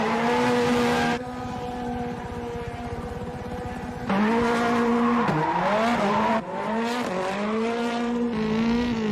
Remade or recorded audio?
recorded